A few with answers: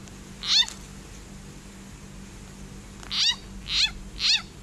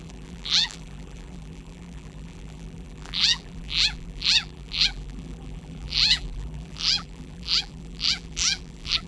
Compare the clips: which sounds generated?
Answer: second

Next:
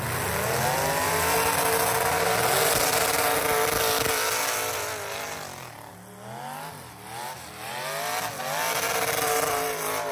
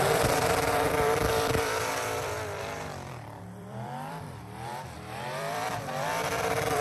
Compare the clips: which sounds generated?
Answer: second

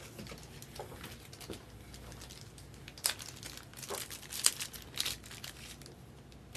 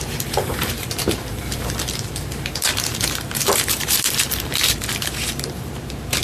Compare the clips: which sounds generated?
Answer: second